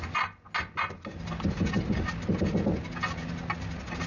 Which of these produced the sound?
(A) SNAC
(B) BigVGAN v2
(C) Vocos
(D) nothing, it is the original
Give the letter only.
D